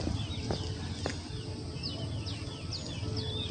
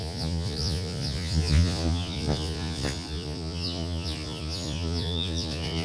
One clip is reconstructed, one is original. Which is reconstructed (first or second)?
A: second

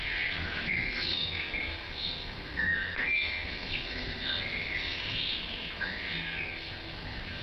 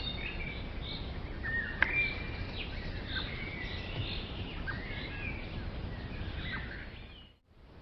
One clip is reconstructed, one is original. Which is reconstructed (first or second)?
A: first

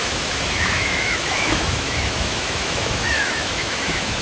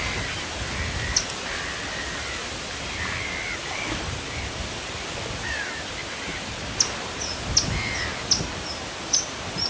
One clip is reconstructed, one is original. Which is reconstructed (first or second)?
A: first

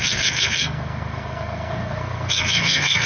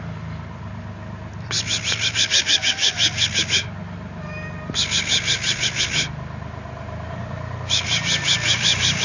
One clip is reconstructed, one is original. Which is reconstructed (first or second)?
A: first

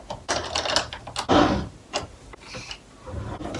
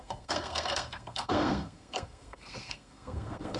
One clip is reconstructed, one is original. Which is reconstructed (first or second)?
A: second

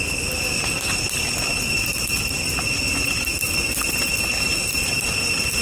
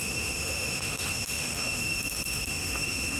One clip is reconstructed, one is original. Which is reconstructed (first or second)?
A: second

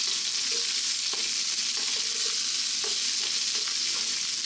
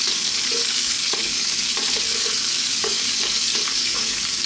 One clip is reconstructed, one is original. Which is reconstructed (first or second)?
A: second